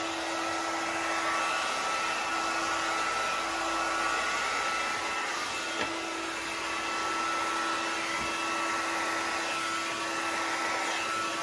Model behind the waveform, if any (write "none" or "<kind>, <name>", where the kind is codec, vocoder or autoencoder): none